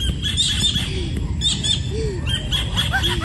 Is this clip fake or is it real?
real